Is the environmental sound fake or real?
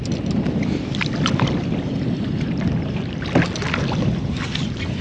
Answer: real